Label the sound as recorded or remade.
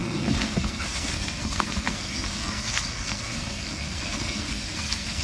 remade